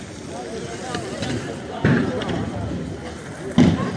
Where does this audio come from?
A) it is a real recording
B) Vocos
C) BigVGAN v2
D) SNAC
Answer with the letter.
A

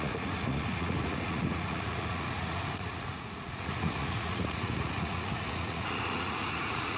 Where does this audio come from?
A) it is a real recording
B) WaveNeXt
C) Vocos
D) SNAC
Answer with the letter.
C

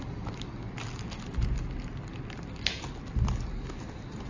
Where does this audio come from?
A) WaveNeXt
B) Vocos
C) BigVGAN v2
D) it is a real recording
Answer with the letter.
D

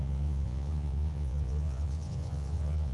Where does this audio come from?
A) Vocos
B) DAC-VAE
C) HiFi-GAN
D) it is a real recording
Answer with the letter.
A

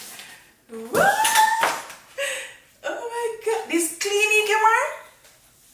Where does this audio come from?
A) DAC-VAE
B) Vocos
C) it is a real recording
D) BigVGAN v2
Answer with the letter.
C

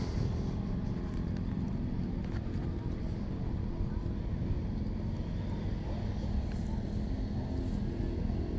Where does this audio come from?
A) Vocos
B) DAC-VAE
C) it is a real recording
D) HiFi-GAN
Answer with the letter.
C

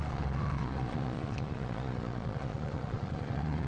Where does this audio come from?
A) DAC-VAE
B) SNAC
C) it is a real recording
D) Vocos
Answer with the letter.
D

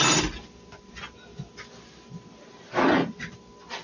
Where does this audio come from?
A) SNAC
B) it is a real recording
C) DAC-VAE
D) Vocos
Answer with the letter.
B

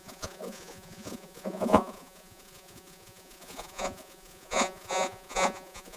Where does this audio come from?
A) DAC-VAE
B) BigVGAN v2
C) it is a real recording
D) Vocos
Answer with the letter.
D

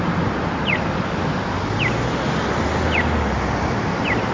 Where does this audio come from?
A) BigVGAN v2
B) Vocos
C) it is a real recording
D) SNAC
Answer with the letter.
C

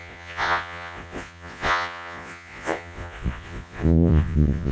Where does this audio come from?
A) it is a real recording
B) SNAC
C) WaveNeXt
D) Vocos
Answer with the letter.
D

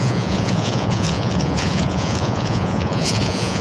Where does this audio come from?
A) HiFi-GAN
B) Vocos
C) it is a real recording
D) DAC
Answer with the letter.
B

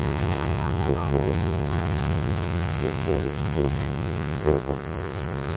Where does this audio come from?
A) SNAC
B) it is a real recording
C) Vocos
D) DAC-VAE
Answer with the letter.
C